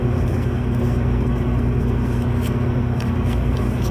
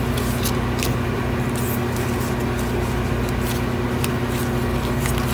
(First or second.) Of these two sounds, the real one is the second